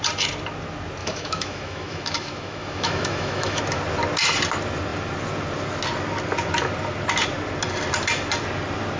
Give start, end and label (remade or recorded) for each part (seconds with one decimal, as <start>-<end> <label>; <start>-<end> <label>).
0.0-1.0 recorded; 1.0-3.6 remade; 3.6-9.0 recorded